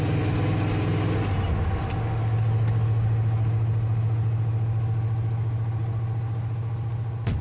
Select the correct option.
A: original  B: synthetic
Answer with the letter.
A